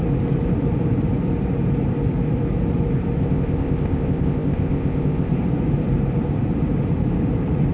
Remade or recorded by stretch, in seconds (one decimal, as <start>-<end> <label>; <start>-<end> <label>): 0.0-3.2 recorded; 3.2-5.3 remade; 5.3-7.7 recorded